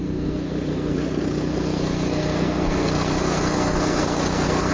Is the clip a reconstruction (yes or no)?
yes